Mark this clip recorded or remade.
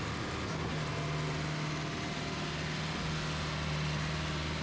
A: recorded